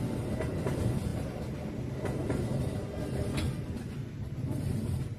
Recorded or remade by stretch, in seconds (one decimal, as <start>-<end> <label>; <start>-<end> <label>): 0.0-5.2 recorded